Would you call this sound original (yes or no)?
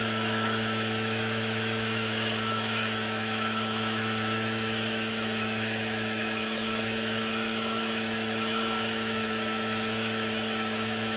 no